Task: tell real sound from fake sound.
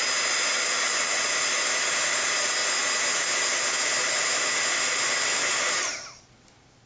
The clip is real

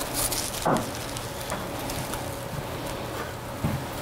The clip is real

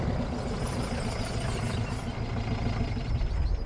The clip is real